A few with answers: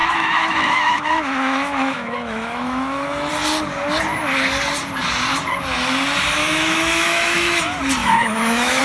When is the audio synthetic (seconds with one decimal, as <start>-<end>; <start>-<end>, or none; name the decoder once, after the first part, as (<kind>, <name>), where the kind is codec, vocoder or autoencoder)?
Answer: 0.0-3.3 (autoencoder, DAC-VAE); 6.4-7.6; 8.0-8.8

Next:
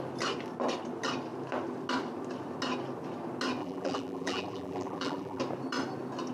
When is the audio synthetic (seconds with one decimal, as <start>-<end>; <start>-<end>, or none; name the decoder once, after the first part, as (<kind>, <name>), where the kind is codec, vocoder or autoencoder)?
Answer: 3.6-5.4 (vocoder, BigVGAN v2)

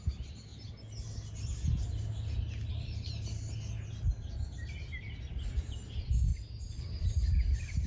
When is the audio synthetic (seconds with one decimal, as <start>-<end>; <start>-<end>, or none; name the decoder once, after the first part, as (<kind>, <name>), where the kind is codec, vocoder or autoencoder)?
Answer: 0.0-0.5 (vocoder, BigVGAN v2); 5.0-6.3; 6.8-7.9

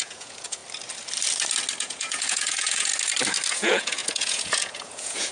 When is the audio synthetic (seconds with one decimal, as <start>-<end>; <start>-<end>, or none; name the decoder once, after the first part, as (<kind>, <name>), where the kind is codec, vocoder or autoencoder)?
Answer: 0.0-0.6 (vocoder, Vocos); 1.8-2.9; 3.5-5.3